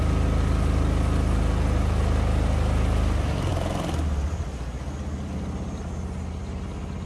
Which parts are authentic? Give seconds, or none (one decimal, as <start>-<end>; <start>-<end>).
0.0-7.0